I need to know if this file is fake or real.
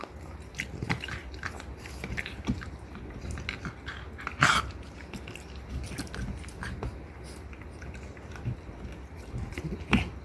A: real